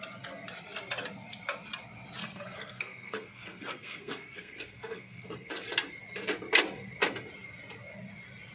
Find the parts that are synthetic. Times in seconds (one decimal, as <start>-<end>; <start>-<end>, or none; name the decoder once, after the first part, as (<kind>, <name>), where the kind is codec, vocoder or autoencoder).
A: 2.2-5.5 (codec, SNAC)